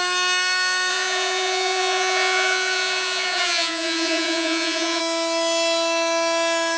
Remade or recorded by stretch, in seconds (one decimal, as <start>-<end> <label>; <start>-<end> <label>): 0.0-0.9 recorded; 0.9-5.0 remade; 5.0-6.8 recorded